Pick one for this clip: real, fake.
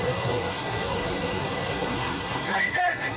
fake